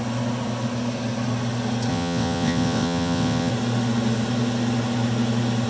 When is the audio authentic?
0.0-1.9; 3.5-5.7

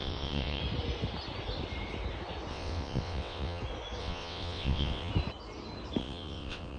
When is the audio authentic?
0.6-2.5; 3.6-4.0; 5.1-6.0

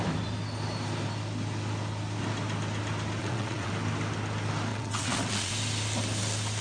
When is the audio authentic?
0.0-3.2; 3.7-4.7; 5.5-6.6

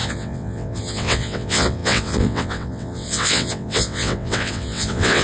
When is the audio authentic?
none

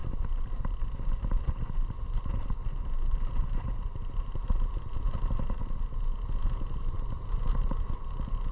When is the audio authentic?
0.0-8.5